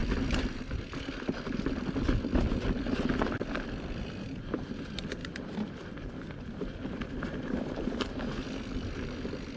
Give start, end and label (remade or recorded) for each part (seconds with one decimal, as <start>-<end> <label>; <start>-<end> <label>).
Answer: 0.0-5.2 recorded; 5.2-8.3 remade; 8.3-9.6 recorded